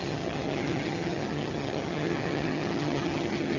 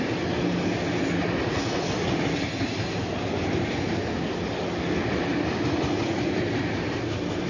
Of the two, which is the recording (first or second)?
second